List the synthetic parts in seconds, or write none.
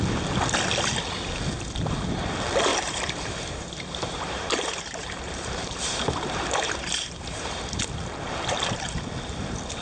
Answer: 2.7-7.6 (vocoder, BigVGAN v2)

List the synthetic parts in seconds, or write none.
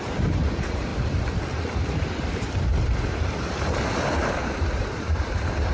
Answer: 0.0-0.9 (vocoder, BigVGAN v2); 4.3-5.7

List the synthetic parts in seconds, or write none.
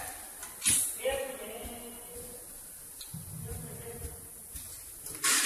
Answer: none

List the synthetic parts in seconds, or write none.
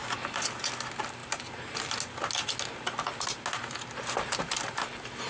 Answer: none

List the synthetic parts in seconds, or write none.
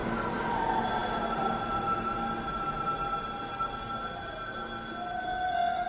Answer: none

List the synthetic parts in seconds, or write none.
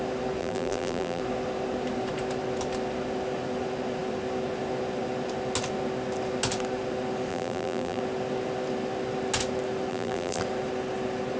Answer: 0.4-1.2 (vocoder, BigVGAN v2); 7.3-8.0; 9.9-10.4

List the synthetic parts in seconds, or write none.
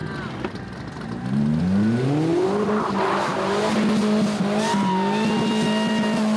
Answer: none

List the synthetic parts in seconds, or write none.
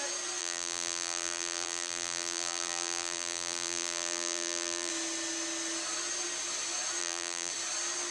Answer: 0.4-4.9 (vocoder, BigVGAN v2); 7.0-7.5